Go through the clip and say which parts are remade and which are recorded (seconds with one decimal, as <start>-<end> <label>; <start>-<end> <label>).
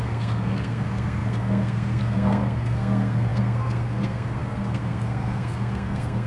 0.0-6.3 remade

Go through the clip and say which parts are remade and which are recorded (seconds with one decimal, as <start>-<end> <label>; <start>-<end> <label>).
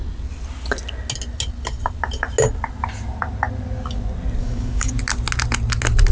0.0-4.4 recorded; 4.4-4.9 remade; 4.9-6.1 recorded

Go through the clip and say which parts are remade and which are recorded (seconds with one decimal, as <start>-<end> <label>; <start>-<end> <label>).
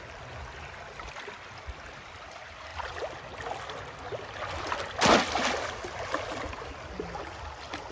0.0-7.9 recorded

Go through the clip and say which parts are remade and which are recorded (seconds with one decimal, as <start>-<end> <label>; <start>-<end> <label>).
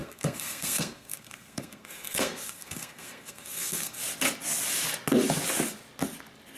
0.0-4.0 remade; 4.0-6.6 recorded